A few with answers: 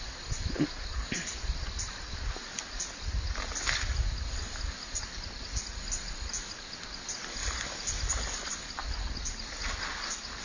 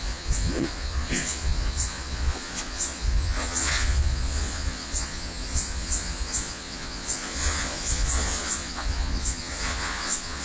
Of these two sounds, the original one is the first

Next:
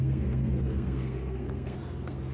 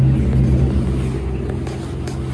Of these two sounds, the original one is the second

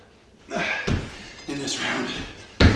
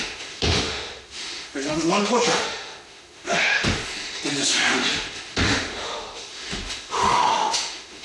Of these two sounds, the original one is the first